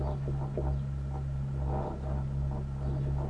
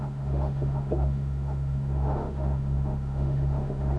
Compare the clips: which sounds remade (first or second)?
second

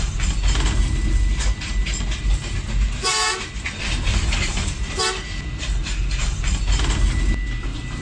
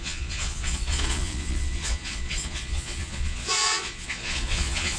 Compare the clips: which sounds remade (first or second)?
second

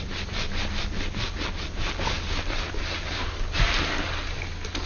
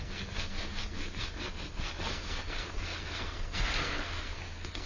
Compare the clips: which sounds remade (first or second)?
second